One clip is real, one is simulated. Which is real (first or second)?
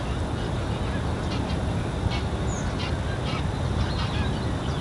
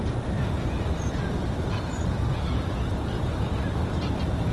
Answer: first